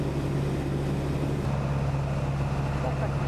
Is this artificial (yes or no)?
no